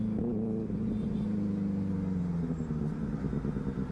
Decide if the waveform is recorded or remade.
recorded